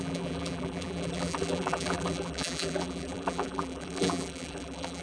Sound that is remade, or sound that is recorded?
remade